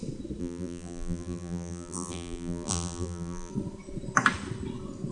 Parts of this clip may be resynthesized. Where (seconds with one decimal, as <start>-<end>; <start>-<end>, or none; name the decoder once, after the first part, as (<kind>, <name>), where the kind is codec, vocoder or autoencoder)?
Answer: 0.4-3.5 (vocoder, BigVGAN v2)